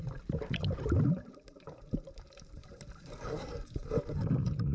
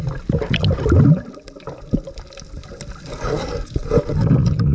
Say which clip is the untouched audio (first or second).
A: second